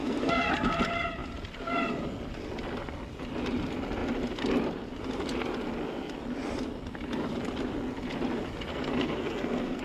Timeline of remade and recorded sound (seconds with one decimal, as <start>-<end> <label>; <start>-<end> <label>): 0.0-0.5 remade; 0.5-8.7 recorded; 8.7-9.8 remade